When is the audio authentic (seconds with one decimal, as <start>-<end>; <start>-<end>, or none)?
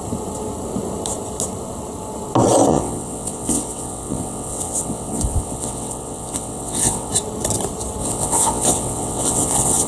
0.0-2.7; 7.1-8.0